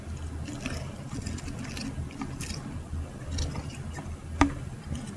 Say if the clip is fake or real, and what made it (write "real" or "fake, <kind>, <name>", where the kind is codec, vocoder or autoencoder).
real